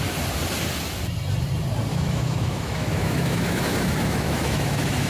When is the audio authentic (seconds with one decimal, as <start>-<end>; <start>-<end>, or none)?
0.0-1.9